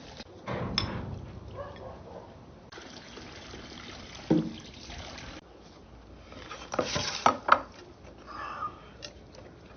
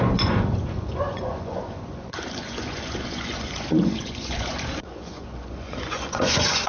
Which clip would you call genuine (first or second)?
first